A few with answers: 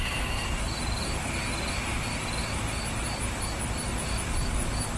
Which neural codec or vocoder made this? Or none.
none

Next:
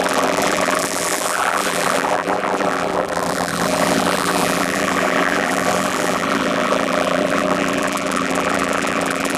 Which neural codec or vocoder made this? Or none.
vocoder, BigVGAN v2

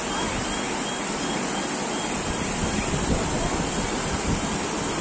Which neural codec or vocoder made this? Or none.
none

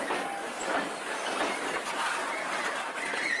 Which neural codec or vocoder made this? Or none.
none